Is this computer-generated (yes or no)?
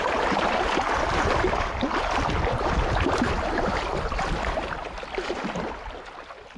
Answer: yes